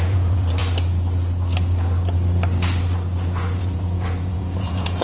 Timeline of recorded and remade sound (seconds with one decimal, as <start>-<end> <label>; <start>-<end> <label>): 0.0-0.6 remade; 0.6-3.6 recorded; 3.6-5.0 remade